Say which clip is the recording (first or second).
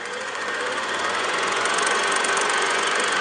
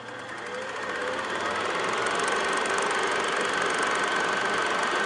second